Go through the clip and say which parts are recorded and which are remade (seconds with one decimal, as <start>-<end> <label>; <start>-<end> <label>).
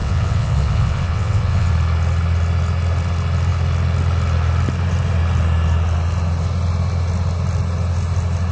0.0-1.7 remade; 1.7-8.5 recorded